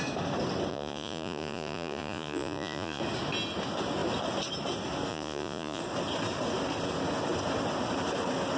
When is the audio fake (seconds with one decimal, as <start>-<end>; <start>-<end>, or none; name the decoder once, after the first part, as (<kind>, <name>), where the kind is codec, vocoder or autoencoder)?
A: 0.7-3.0 (vocoder, Vocos); 5.1-5.8